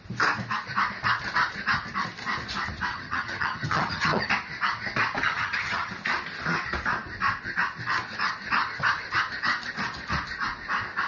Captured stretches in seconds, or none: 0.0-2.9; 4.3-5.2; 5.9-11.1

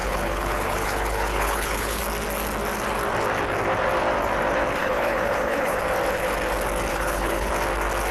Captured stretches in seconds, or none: 2.0-4.8; 5.8-6.9; 7.5-8.1

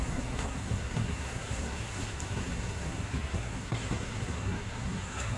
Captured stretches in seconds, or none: none

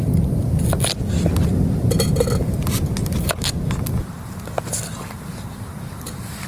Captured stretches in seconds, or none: 0.4-4.0